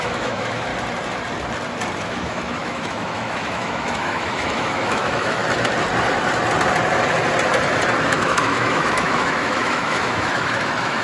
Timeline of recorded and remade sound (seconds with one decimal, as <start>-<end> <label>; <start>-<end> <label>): 0.0-0.7 remade; 0.7-2.0 recorded; 2.0-5.4 remade; 5.4-8.1 recorded; 8.1-11.0 remade